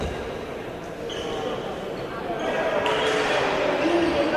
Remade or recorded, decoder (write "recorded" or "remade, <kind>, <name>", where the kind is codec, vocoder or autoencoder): recorded